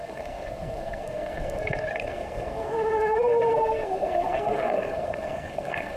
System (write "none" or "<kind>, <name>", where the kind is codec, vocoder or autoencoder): codec, SNAC